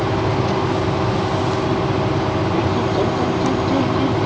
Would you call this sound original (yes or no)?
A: yes